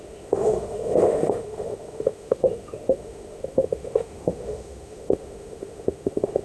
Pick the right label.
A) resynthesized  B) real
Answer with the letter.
A